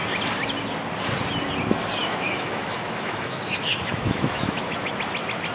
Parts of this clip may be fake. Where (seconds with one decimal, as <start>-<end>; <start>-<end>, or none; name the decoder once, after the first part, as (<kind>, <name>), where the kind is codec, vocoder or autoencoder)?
2.0-4.9 (autoencoder, DAC-VAE)